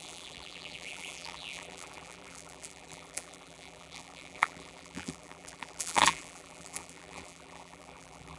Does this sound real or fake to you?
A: fake